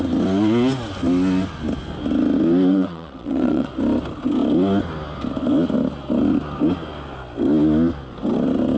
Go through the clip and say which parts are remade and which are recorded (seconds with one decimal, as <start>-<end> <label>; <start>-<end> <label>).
0.0-2.7 recorded; 2.7-3.7 remade; 3.7-8.8 recorded